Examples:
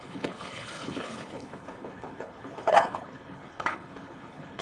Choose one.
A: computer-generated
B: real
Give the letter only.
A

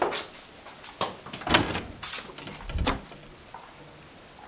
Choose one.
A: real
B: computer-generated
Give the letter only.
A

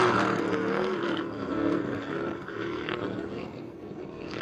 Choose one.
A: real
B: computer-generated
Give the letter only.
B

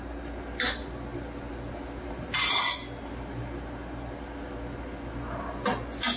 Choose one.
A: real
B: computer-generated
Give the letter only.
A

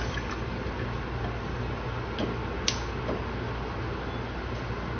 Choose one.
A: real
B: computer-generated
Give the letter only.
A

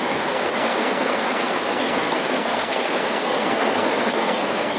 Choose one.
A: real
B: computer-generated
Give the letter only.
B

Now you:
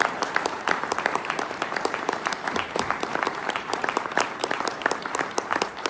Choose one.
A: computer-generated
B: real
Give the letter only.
A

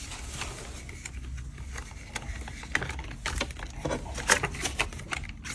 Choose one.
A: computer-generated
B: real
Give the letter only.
B